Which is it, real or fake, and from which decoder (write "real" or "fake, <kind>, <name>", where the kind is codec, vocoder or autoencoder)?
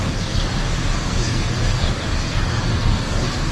fake, codec, SNAC